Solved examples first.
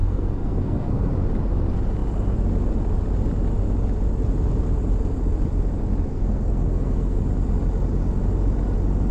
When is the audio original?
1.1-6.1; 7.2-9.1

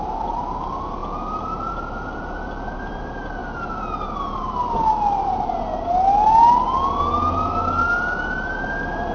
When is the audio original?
0.0-1.0; 1.7-9.1

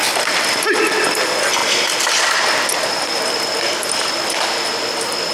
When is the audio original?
0.0-5.3

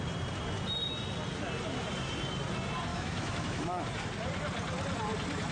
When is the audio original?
0.0-2.9; 3.8-5.5

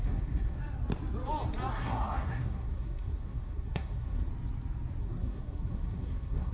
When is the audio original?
0.6-1.7; 4.3-5.0